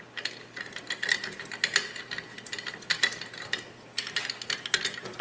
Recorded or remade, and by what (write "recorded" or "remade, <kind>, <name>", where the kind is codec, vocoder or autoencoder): recorded